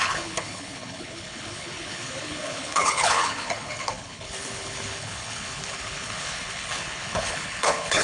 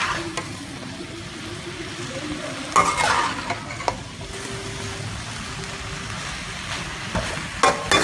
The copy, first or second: first